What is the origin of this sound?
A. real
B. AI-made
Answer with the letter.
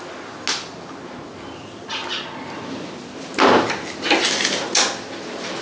A